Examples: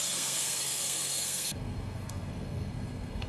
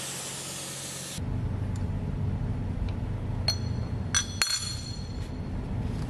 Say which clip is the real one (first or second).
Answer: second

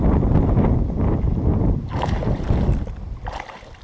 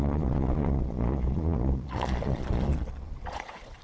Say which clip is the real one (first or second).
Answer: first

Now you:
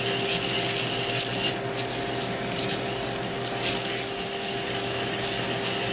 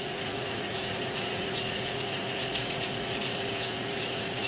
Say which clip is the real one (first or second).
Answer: first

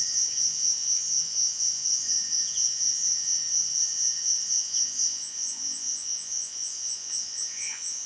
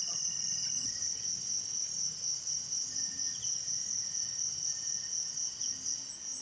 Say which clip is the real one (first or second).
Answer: second